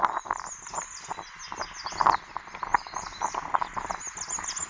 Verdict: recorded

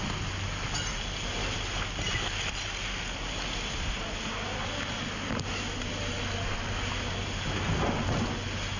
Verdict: recorded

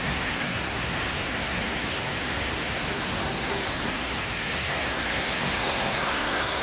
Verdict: remade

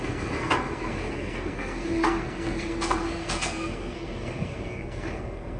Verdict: remade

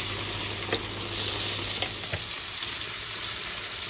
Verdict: recorded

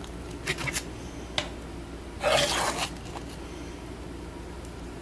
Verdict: recorded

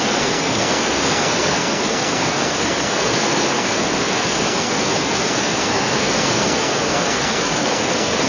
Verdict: remade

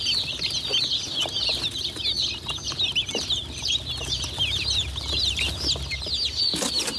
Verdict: recorded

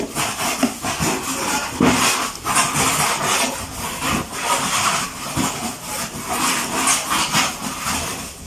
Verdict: recorded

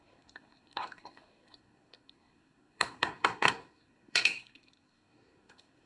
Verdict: remade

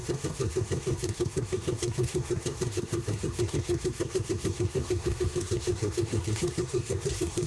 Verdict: remade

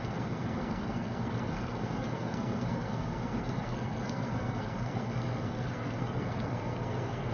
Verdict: remade